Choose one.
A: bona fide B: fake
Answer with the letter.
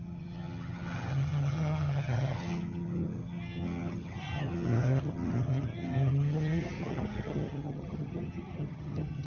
B